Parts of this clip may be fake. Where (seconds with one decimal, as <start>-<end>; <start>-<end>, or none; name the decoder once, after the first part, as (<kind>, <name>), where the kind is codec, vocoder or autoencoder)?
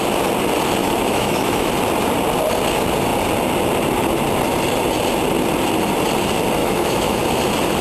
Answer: 0.8-1.7 (autoencoder, DAC-VAE); 6.6-7.2